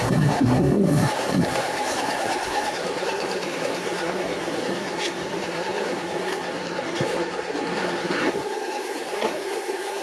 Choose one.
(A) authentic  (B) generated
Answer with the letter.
B